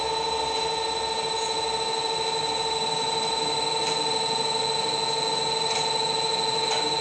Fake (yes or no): no